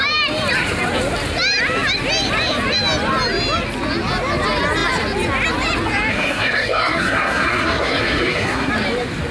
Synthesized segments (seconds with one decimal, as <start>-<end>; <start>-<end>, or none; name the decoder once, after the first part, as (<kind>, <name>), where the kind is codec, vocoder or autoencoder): 6.1-8.7 (codec, SNAC)

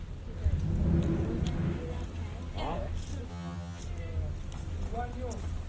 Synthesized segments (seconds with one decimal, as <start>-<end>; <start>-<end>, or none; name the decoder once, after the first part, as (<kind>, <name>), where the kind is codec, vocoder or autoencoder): 3.3-3.8 (vocoder, HiFi-GAN)

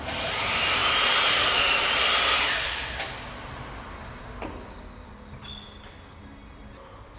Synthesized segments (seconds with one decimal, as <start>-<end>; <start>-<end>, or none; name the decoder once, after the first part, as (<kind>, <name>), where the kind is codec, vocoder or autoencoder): none

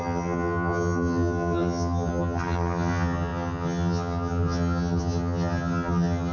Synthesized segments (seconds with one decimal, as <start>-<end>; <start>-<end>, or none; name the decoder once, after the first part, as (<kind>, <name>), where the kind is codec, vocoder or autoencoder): 0.0-6.3 (vocoder, HiFi-GAN)

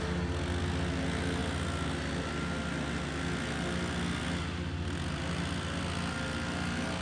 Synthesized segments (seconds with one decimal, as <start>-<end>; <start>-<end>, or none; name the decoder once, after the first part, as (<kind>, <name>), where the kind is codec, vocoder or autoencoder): none

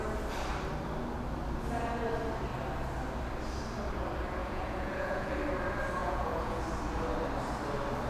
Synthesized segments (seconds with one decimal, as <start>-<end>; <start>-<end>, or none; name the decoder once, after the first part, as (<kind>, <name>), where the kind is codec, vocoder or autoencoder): 4.4-5.3 (vocoder, Vocos); 6.0-6.6

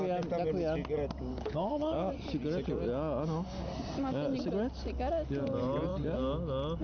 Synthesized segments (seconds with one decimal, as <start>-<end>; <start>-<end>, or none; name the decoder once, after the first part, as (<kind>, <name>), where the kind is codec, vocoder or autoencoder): 1.3-2.1 (codec, HILCodec)